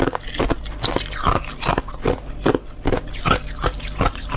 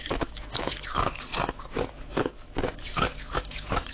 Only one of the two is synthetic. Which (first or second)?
second